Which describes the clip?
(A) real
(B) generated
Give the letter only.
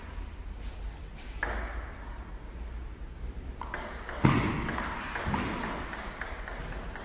A